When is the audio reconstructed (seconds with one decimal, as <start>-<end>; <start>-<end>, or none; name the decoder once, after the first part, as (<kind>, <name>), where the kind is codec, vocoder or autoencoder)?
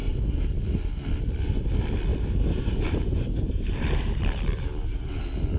2.1-5.6 (vocoder, BigVGAN v2)